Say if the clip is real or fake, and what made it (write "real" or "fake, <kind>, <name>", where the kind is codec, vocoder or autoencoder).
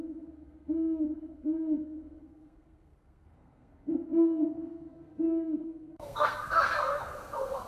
fake, codec, SNAC